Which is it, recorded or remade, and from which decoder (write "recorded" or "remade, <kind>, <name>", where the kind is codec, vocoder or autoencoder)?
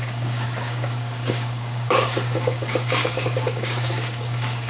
remade, codec, DAC